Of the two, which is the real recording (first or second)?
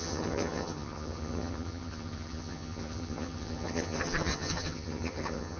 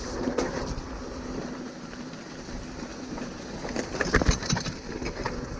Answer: second